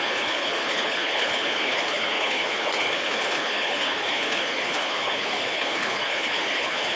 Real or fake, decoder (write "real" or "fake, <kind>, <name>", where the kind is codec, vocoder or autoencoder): fake, codec, HILCodec